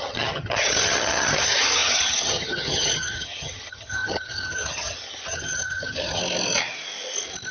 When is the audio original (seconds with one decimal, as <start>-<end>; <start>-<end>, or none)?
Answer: 6.2-7.5